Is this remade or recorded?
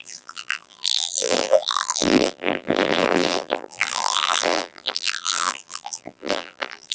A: remade